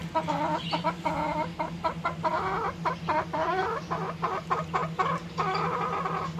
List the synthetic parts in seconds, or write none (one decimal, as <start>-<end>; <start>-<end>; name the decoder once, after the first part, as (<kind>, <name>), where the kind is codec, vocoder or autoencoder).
none

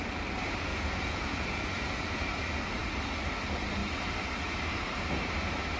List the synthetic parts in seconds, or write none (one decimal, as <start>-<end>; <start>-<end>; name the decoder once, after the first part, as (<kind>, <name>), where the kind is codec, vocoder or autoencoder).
0.7-2.1 (vocoder, Vocos)

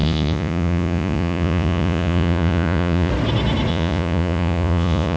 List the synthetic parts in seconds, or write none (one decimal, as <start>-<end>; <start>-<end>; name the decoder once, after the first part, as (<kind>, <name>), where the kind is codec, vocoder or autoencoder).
0.0-3.1 (vocoder, Vocos); 3.7-5.2

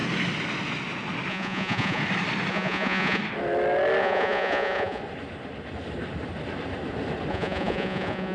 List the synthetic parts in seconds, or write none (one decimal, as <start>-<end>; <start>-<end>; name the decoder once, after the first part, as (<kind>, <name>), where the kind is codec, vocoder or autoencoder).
1.3-2.0 (vocoder, Vocos); 2.5-3.2; 4.0-5.0; 7.3-8.3

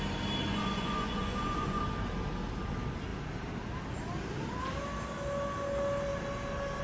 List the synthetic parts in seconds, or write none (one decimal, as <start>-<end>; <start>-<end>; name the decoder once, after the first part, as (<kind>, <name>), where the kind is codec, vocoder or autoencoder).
0.5-1.8 (vocoder, Vocos)

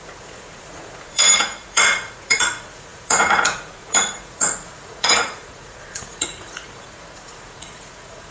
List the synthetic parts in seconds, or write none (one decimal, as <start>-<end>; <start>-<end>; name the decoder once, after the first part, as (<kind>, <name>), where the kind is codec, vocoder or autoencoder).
0.0-8.3 (vocoder, Vocos)